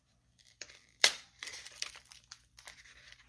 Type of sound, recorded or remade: remade